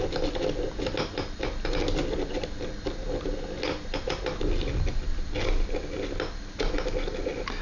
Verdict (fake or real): real